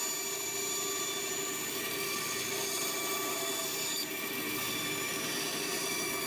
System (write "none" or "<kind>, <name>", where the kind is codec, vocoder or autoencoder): none